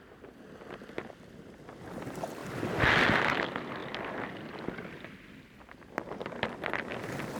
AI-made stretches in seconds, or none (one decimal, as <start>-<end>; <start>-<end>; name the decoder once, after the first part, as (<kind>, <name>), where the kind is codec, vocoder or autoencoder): none

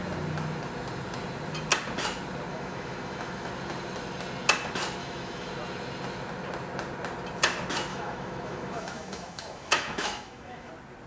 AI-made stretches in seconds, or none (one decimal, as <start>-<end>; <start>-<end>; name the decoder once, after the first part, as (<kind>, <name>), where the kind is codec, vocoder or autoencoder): 2.5-3.5 (autoencoder, DAC-VAE); 5.0-5.5; 7.9-10.7

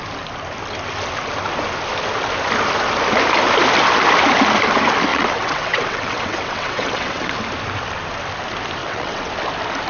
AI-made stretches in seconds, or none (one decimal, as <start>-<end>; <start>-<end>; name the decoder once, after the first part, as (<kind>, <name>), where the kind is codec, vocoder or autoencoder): 5.1-7.3 (vocoder, WaveNeXt); 8.8-9.3